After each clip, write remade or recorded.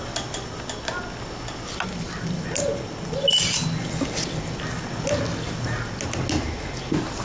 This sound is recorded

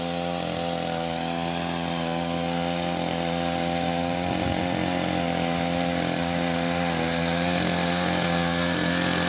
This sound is recorded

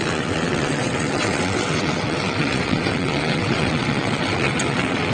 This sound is remade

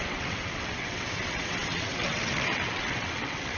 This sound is remade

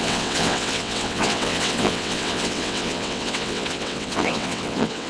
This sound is remade